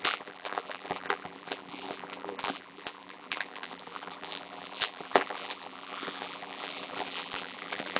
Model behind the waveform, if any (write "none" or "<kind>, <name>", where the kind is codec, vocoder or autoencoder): vocoder, BigVGAN v2